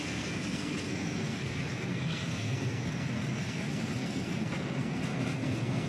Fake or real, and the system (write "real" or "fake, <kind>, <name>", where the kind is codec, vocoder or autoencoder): fake, codec, SNAC